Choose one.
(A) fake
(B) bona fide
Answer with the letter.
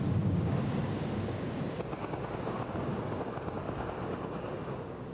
A